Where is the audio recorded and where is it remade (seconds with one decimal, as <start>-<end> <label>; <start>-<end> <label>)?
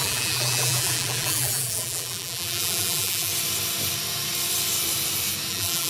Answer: 0.0-3.3 remade; 3.3-5.5 recorded; 5.5-5.9 remade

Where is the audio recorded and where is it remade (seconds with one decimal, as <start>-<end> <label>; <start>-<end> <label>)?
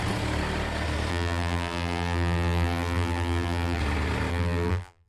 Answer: 0.0-1.1 recorded; 1.1-3.8 remade; 3.8-4.3 recorded; 4.3-5.1 remade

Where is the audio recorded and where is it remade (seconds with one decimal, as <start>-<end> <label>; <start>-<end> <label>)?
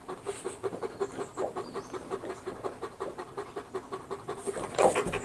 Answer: 0.0-2.3 remade; 2.3-5.2 recorded